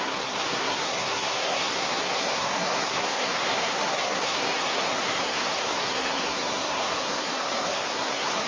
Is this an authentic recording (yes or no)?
no